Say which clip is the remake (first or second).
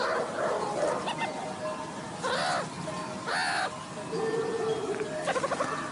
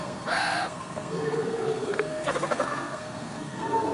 second